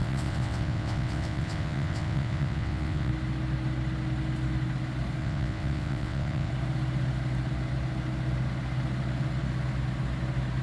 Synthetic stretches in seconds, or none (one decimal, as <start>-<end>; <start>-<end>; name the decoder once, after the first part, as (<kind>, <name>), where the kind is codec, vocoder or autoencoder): 0.0-3.1 (vocoder, WaveNeXt); 5.2-6.5

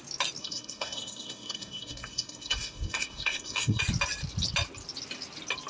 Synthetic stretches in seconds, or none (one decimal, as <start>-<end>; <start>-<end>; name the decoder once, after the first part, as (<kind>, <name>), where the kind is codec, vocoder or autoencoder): 0.4-3.8 (codec, SNAC)

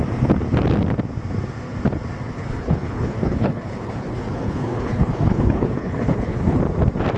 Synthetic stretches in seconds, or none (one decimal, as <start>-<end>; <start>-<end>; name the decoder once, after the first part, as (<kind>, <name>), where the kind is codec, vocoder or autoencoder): 2.3-6.6 (codec, HILCodec)